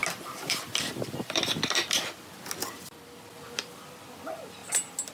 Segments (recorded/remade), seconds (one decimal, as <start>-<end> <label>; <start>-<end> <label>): 0.0-5.1 recorded